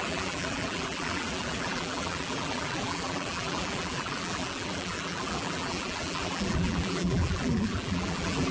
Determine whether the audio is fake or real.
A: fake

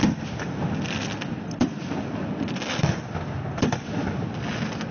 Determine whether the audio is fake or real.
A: real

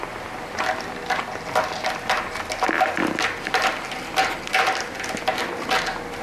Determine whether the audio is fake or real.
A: real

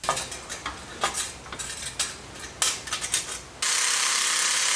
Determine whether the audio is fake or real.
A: real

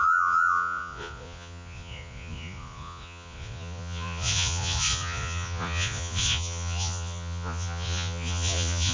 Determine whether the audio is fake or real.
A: fake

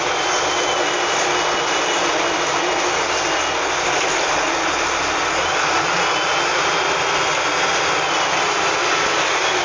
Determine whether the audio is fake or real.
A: real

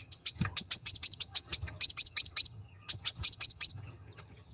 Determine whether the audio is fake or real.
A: fake